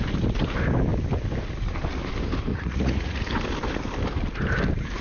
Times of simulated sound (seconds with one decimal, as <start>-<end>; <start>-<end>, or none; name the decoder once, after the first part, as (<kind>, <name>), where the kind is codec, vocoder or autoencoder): 2.5-3.2 (vocoder, Vocos)